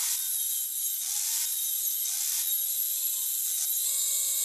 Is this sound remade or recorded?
recorded